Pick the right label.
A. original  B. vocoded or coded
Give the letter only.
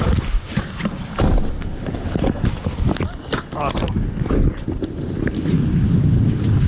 A